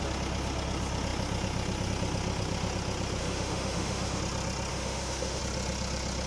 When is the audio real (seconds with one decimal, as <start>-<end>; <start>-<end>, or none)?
0.0-3.2; 4.2-4.7; 5.4-6.3